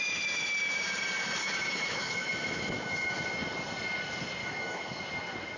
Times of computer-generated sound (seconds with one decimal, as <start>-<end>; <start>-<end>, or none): 1.4-3.2; 4.4-5.0